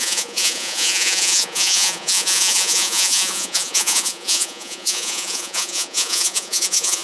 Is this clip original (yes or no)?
no